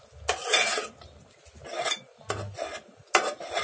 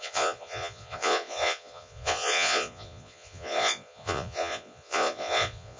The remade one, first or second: second